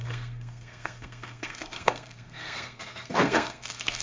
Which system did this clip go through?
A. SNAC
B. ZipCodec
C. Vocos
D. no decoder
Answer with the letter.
A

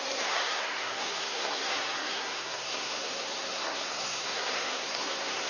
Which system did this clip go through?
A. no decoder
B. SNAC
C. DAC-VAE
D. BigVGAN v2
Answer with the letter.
B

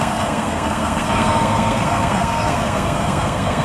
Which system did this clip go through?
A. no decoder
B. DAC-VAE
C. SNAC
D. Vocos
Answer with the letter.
C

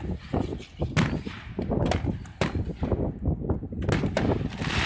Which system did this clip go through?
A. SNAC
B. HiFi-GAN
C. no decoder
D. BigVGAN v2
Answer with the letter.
C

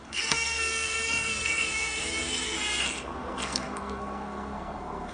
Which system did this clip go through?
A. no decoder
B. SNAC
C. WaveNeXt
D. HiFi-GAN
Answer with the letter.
B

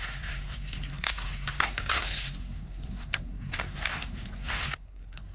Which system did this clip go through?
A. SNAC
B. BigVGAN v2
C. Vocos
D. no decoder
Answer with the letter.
A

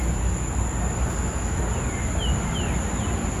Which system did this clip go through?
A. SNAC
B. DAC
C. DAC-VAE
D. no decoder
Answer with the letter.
D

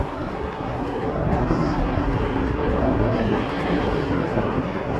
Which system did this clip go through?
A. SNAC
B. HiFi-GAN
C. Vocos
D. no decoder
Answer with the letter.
A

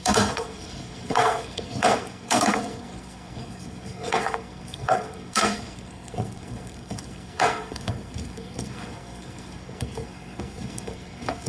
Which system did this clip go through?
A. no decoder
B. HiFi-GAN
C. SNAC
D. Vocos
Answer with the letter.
C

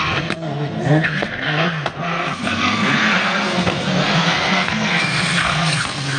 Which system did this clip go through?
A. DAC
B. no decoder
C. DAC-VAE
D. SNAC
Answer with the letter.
D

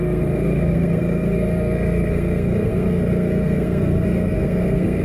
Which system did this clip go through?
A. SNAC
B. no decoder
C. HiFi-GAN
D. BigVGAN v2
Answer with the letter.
A